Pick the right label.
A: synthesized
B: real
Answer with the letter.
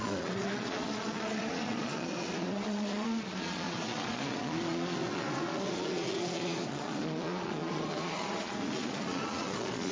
A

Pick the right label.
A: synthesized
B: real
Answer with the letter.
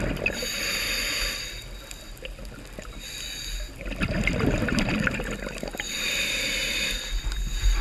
B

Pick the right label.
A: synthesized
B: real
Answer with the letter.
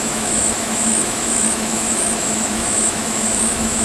A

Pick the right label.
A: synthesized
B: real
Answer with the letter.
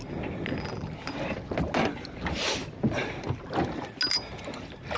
B